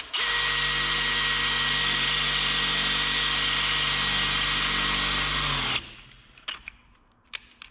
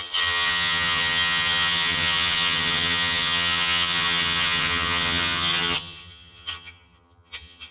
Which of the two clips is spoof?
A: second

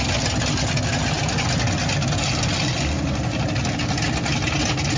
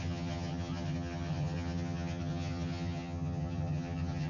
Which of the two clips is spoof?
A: second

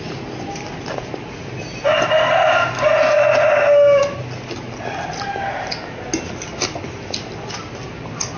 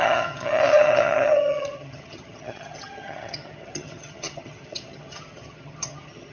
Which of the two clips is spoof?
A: second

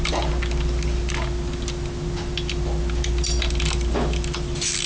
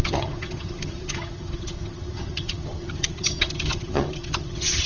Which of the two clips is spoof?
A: second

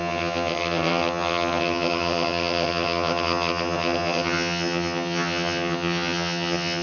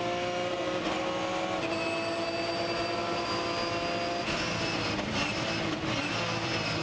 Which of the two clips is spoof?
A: first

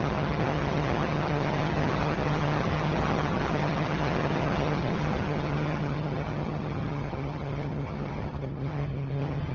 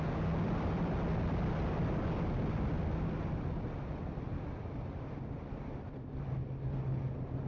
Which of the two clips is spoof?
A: first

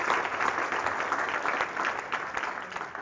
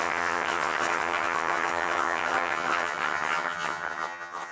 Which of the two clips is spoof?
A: second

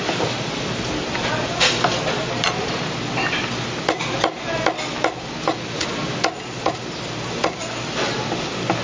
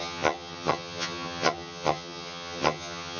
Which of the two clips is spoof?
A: second